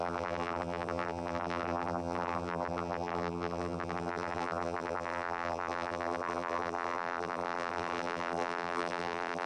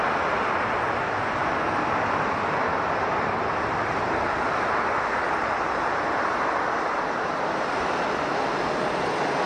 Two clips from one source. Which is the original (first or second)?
second